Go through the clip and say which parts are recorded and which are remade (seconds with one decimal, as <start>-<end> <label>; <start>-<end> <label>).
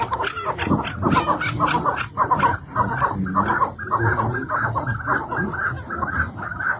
0.0-6.8 recorded